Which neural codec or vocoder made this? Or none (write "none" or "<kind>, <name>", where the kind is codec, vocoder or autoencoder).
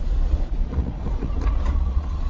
vocoder, Vocos